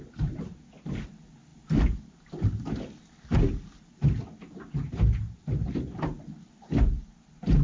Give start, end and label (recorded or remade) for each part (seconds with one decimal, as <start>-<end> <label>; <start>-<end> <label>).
0.0-7.6 recorded